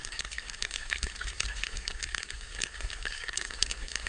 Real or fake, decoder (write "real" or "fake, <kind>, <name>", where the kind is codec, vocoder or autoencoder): fake, codec, SNAC